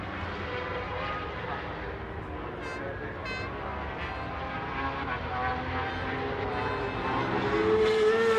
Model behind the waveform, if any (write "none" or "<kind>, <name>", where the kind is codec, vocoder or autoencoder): none